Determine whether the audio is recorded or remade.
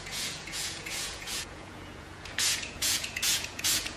remade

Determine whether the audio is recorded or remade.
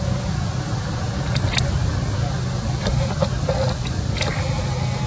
recorded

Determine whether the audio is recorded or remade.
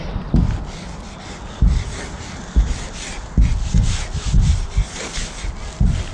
recorded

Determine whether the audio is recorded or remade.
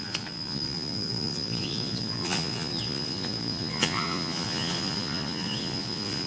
remade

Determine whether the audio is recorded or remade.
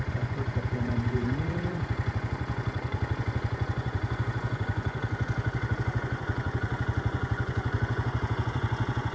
remade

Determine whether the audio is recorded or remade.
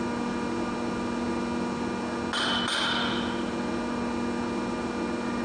recorded